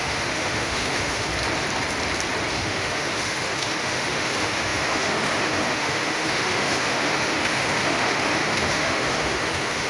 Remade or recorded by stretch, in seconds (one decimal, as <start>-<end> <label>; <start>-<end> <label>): 0.0-1.3 remade; 1.3-2.5 recorded; 2.5-9.9 remade